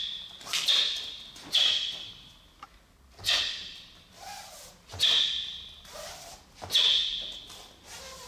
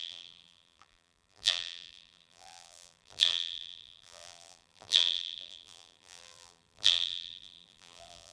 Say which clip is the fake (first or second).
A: second